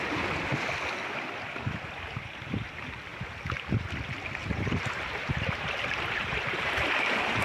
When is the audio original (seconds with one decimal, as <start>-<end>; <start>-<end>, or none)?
0.0-4.4; 6.7-7.4